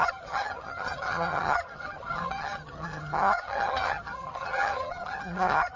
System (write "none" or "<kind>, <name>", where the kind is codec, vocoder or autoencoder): vocoder, HiFi-GAN